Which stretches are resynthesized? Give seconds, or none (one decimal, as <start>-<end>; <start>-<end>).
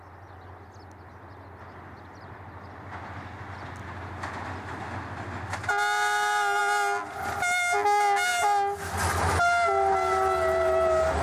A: none